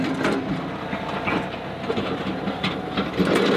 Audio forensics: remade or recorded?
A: recorded